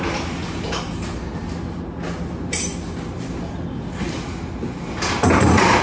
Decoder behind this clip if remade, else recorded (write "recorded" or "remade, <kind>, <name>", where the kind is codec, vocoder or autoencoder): recorded